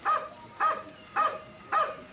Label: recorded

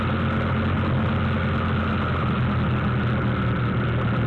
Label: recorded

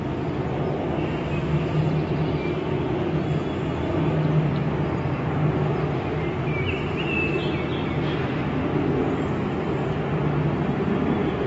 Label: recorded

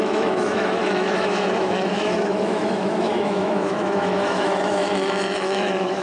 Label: remade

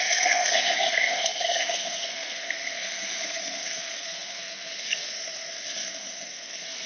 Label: remade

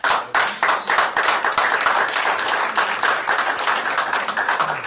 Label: recorded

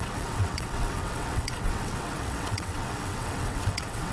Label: remade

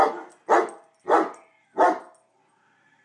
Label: recorded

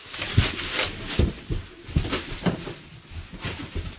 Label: recorded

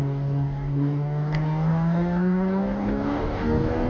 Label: remade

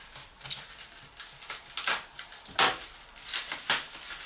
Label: recorded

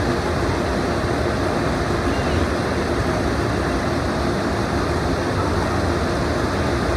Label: recorded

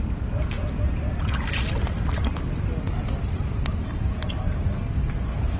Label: recorded